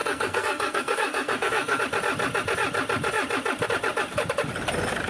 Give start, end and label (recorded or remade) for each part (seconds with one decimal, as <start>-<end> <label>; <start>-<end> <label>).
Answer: 0.0-1.8 remade; 1.8-5.1 recorded